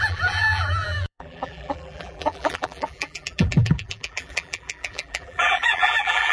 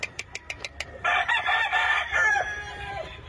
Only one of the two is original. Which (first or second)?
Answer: second